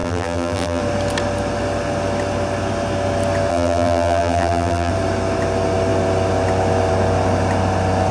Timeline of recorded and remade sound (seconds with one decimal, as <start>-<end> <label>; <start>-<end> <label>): 0.0-0.8 remade; 0.8-3.5 recorded; 3.5-4.9 remade; 4.9-8.1 recorded